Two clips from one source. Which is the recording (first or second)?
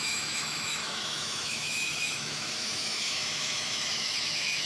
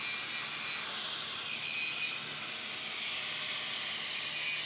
second